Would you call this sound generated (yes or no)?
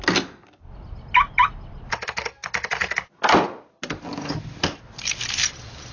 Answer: no